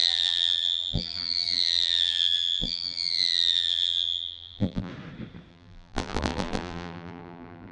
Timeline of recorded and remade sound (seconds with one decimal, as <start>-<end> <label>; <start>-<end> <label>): 0.0-4.9 remade; 4.9-5.5 recorded; 5.5-7.7 remade

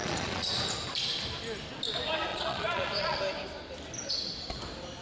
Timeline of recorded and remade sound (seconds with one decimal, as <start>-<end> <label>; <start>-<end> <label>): 0.0-0.6 remade; 0.6-2.3 recorded; 2.3-3.2 remade; 3.2-5.0 recorded

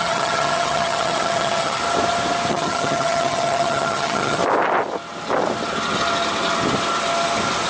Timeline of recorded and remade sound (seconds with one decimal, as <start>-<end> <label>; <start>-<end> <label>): 0.0-1.8 remade; 1.8-2.5 recorded; 2.5-4.4 remade; 4.4-7.7 recorded